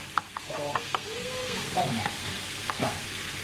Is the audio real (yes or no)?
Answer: no